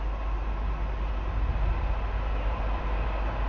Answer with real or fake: real